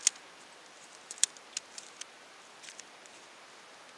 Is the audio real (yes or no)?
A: yes